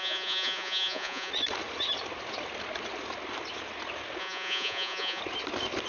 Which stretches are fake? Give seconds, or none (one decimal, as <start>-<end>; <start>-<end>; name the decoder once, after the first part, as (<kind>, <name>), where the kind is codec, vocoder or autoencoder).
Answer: 0.0-1.3 (vocoder, Vocos); 4.2-5.2